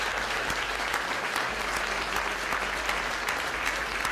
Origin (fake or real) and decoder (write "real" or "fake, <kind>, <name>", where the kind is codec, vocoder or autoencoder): real